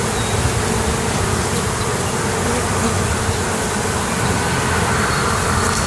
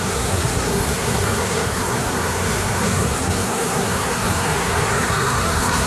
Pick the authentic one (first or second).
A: first